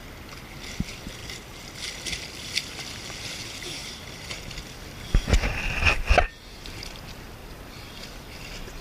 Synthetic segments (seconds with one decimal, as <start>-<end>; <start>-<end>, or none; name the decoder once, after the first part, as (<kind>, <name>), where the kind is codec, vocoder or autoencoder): 1.2-3.4 (vocoder, BigVGAN v2); 3.8-4.6